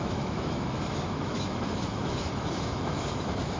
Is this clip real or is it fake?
fake